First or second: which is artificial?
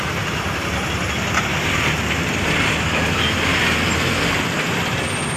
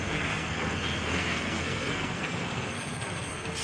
second